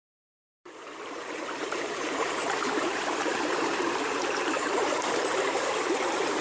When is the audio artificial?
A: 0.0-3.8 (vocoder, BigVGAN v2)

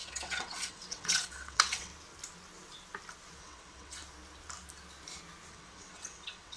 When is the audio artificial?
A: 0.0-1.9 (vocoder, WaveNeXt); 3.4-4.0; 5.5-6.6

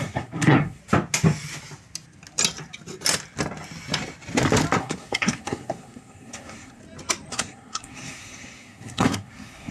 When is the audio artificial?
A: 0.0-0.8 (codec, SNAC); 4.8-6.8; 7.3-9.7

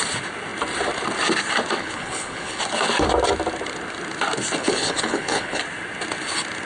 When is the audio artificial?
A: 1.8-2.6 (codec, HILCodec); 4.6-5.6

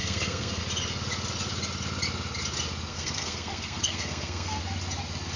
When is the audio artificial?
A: 0.0-0.6 (codec, SNAC); 2.9-4.6

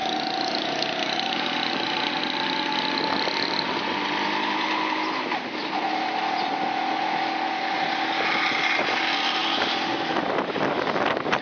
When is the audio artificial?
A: none

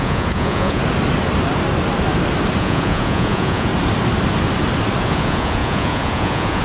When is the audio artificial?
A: 0.0-0.8 (vocoder, Vocos); 2.6-3.7; 5.0-6.6

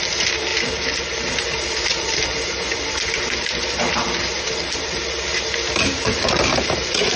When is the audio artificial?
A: 0.0-7.2 (vocoder, BigVGAN v2)